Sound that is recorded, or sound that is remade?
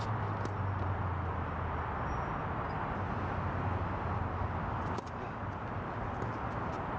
recorded